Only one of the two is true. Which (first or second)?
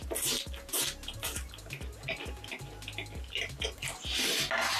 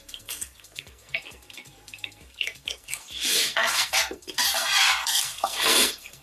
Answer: first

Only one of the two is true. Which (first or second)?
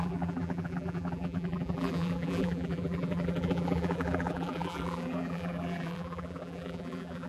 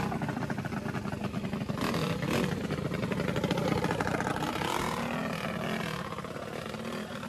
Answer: second